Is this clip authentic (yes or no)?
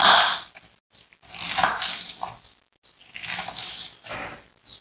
yes